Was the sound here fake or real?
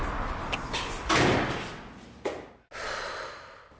real